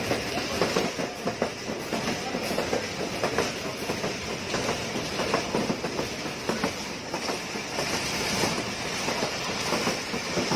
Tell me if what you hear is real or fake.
real